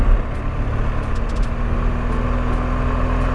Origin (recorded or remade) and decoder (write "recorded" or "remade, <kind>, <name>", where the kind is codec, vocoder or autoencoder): recorded